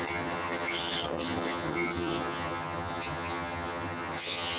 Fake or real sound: fake